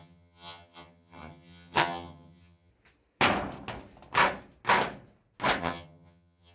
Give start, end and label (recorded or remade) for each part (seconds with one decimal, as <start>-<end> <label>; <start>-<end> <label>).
0.0-2.7 remade; 2.7-5.6 recorded; 5.6-6.5 remade